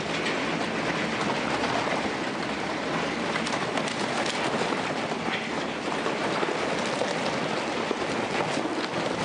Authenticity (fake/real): real